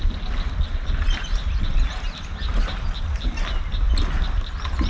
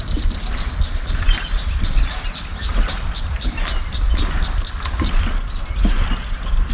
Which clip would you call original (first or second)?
first